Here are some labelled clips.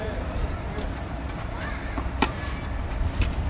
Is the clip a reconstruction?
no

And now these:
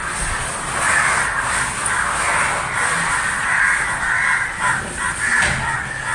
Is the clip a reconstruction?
no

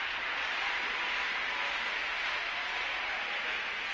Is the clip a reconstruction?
no